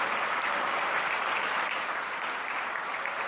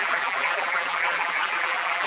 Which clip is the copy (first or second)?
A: second